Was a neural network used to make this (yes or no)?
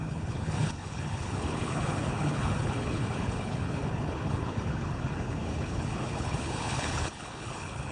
yes